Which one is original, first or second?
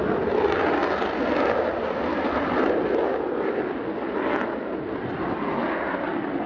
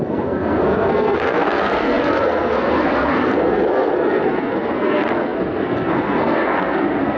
first